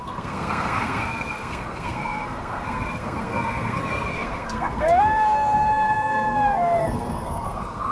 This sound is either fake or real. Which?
fake